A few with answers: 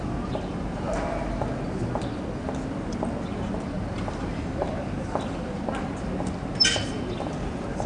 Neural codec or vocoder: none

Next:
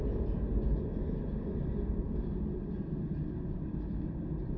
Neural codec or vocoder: none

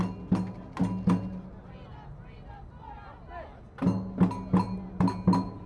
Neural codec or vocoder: none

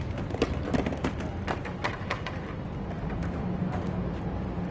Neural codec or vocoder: none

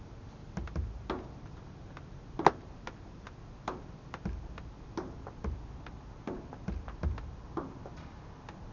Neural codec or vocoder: none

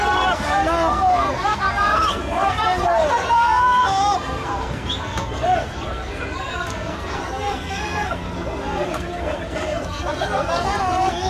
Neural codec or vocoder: codec, SNAC